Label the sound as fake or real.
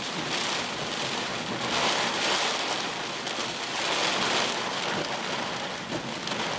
real